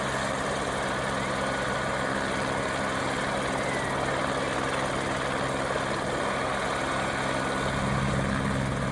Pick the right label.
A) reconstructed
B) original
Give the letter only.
B